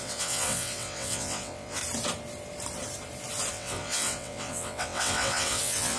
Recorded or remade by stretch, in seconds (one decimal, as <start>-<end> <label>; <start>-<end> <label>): 0.0-1.8 remade; 1.8-3.5 recorded; 3.5-6.0 remade